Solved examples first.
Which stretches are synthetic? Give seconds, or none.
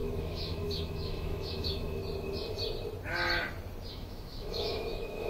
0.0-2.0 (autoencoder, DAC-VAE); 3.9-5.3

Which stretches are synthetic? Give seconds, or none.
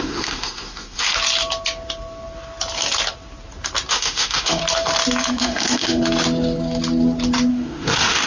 0.0-1.1 (autoencoder, DAC-VAE); 3.9-4.6; 5.3-6.0; 7.5-8.3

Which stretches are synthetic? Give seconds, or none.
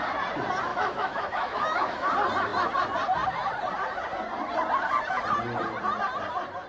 0.7-2.1 (autoencoder, DAC-VAE)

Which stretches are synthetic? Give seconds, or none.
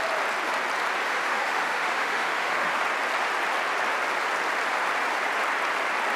1.0-2.8 (autoencoder, DAC-VAE)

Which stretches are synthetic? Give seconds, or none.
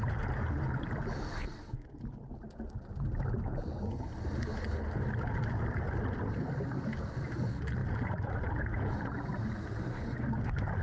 none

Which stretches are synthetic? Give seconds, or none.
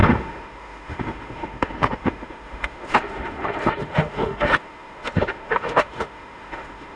0.0-7.0 (autoencoder, DAC-VAE)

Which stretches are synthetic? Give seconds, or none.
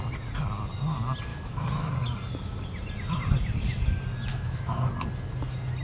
1.3-1.9 (autoencoder, DAC-VAE); 4.3-4.9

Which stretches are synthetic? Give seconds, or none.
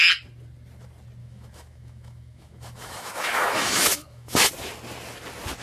1.2-4.5 (autoencoder, DAC-VAE)